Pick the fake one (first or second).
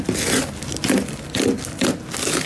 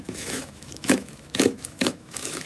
second